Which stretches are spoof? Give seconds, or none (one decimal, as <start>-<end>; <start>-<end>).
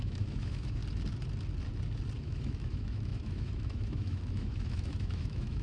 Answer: 0.0-0.8; 2.2-5.6